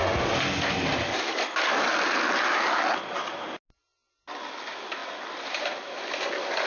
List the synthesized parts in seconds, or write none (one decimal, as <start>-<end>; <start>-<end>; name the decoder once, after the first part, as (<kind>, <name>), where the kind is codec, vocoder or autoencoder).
none